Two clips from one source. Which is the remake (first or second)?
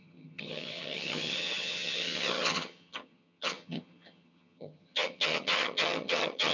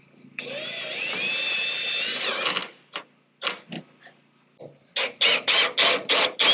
first